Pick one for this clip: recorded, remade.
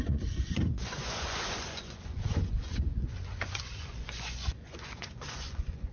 remade